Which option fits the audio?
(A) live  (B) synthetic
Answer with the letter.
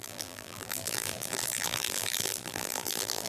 B